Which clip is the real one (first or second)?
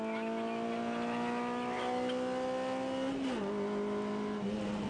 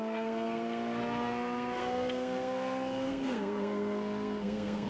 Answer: first